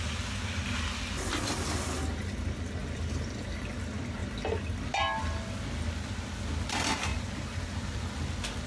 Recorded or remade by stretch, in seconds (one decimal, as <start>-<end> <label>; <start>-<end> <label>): 0.0-7.1 recorded; 7.1-8.0 remade; 8.0-8.7 recorded